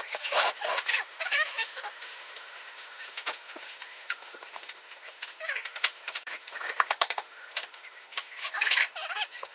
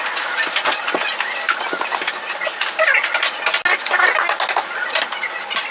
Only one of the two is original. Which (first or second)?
second